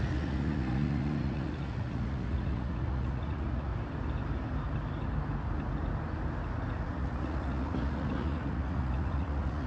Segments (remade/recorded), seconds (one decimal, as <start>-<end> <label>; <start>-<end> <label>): 0.0-3.7 remade; 3.7-6.8 recorded; 6.8-9.7 remade